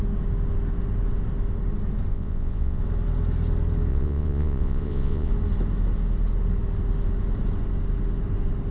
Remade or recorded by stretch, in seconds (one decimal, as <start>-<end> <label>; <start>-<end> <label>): 0.0-2.1 recorded; 2.1-2.8 remade; 2.8-3.9 recorded; 3.9-5.3 remade; 5.3-8.7 recorded